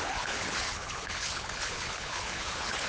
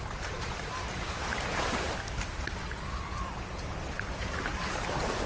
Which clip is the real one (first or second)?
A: second